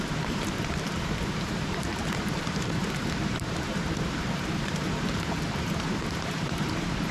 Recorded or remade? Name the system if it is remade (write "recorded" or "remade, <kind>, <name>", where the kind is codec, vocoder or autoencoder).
remade, vocoder, BigVGAN v2